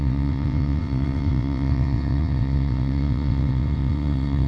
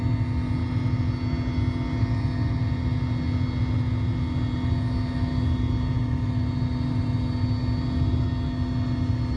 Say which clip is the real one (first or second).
second